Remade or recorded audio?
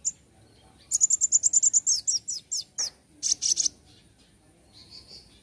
recorded